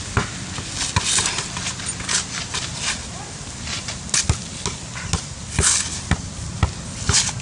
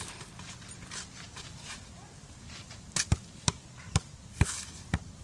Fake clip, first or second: second